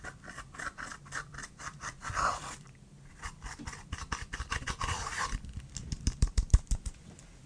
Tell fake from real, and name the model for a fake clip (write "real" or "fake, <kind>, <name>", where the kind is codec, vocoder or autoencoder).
fake, vocoder, BigVGAN v2